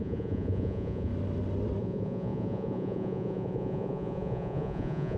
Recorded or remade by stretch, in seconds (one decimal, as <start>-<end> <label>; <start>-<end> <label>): 0.0-1.1 remade; 1.1-1.8 recorded; 1.8-5.2 remade